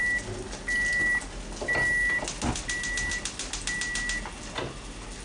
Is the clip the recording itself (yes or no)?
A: yes